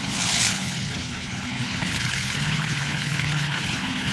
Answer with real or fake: fake